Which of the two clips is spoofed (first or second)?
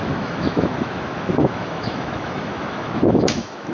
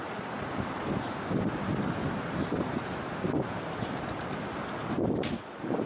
first